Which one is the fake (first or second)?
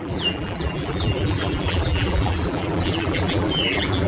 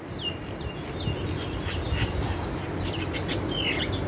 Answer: first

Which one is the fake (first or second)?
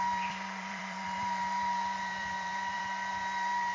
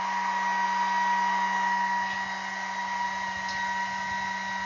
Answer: first